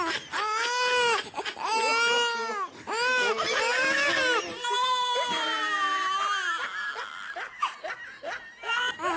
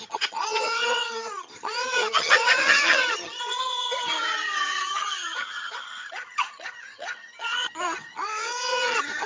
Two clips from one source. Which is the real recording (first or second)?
first